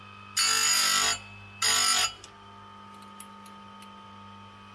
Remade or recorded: recorded